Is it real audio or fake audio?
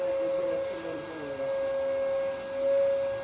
real